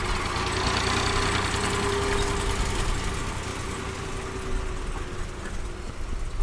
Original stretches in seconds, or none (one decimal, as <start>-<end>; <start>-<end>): 0.0-3.5; 4.1-6.4